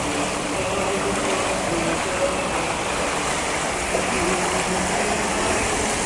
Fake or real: real